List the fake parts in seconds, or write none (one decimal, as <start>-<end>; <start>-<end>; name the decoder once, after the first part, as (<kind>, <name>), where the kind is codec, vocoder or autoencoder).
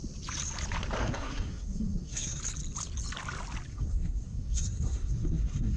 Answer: 1.0-2.4 (codec, SNAC); 3.7-5.8